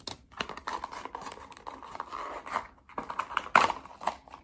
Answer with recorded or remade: recorded